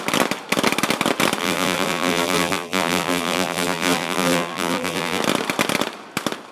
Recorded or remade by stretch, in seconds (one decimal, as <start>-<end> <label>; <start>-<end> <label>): 0.0-1.4 recorded; 1.4-5.2 remade; 5.2-6.5 recorded